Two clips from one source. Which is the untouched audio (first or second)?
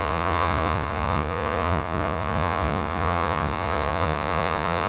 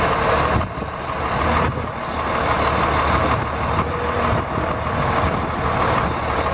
second